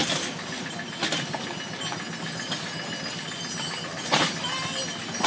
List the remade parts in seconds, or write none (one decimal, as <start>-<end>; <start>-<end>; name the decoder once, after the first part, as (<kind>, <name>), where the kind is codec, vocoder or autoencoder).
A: none